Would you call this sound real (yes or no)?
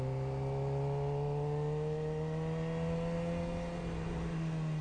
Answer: yes